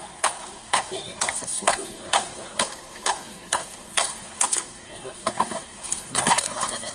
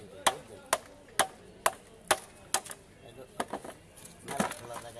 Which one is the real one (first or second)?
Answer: second